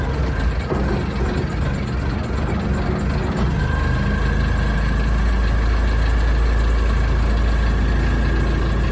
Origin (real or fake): real